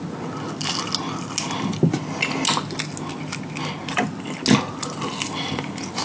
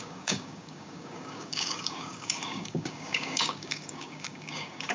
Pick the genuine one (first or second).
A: first